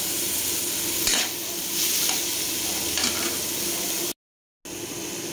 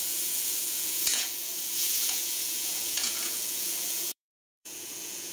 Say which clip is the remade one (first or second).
second